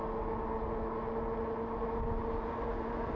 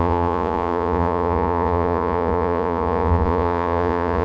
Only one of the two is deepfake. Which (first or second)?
second